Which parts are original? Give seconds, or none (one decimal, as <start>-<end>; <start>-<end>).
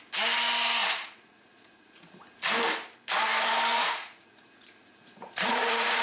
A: 0.0-0.8; 2.2-3.7